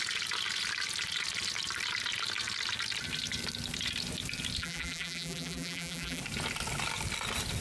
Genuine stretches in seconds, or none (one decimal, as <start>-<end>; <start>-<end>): 0.0-4.6; 6.2-7.6